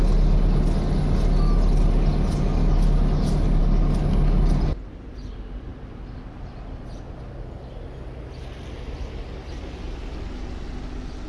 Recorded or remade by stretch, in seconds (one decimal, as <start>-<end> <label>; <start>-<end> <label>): 0.0-11.3 recorded

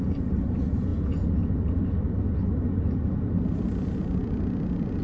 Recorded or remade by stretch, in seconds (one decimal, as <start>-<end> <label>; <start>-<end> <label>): 0.0-5.0 recorded

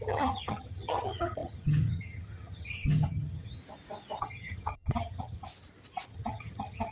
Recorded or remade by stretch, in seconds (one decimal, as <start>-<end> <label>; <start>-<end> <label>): 0.0-3.6 remade; 3.6-4.2 recorded; 4.2-5.5 remade; 5.5-6.1 recorded; 6.1-6.9 remade

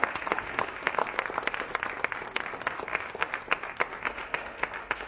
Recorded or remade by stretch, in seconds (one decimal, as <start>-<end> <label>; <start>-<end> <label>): 0.0-1.0 remade; 1.0-2.7 recorded; 2.7-3.3 remade; 3.3-4.0 recorded; 4.0-5.1 remade